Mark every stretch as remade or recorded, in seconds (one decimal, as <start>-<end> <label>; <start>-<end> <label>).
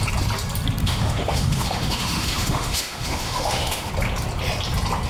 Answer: 0.0-0.8 recorded; 0.8-3.9 remade; 3.9-5.1 recorded